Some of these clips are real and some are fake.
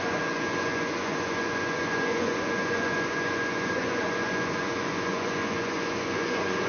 fake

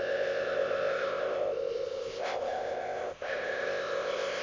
fake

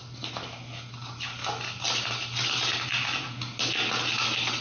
real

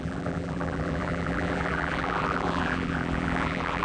fake